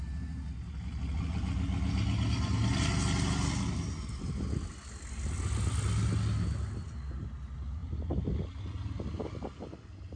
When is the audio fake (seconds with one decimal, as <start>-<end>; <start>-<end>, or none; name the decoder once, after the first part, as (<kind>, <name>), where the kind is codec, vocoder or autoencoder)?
none